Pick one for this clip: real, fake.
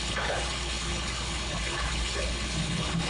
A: fake